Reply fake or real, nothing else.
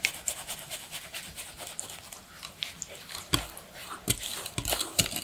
real